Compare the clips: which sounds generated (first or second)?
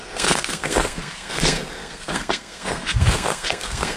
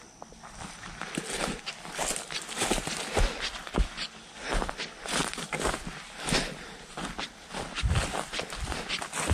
first